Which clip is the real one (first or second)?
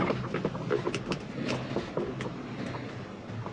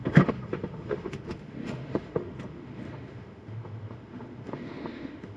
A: first